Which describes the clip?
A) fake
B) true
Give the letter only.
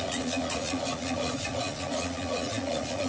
A